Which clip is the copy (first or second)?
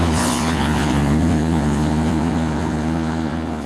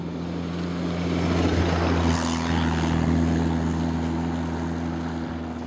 first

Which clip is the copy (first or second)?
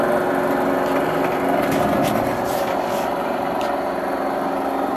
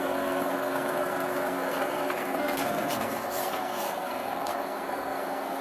second